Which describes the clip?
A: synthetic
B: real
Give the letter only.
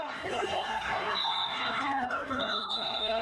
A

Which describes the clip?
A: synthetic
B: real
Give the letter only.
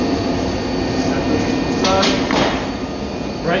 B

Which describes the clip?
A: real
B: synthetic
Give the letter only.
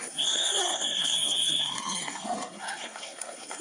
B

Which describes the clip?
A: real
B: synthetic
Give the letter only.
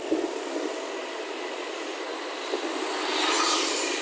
A